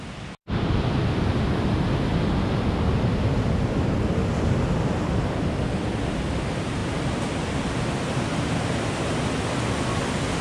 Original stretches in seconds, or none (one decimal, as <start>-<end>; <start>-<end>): 0.0-10.4